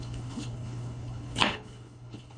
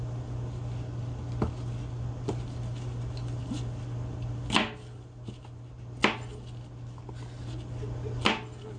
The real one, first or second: second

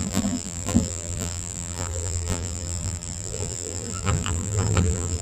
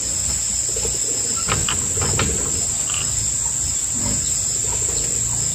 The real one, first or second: second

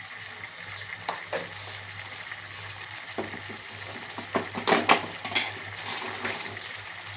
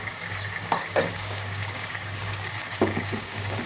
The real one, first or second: first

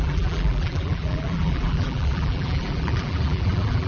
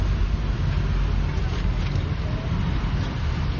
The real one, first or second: second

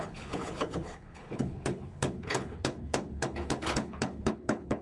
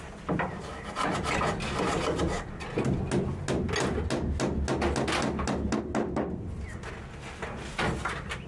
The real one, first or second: second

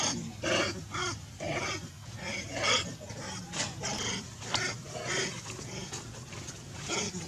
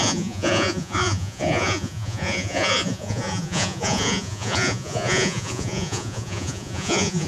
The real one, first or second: first